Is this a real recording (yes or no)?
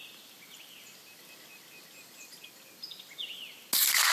yes